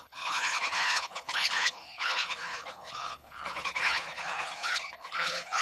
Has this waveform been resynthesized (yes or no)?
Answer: yes